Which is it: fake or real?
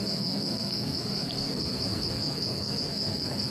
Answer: fake